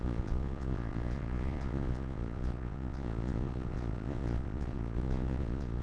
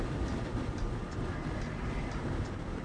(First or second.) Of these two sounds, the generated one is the first